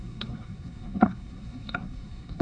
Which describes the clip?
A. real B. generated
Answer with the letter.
B